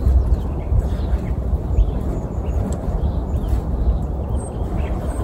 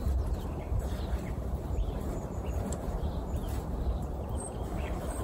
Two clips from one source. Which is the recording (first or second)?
first